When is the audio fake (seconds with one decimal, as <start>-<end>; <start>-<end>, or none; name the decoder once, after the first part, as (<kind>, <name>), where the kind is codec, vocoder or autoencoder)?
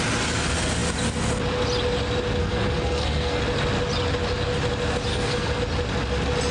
2.4-3.4 (codec, SNAC); 5.1-5.6